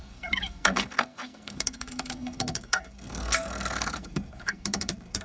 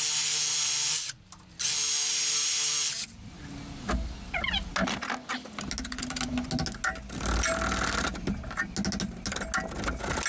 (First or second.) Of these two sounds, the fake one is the first